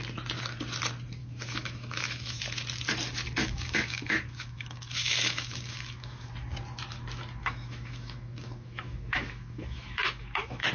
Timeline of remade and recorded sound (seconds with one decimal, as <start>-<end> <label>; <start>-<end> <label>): 0.0-1.2 recorded; 1.2-2.4 remade; 2.4-3.4 recorded; 3.4-6.3 remade; 6.3-7.4 recorded; 7.4-10.7 remade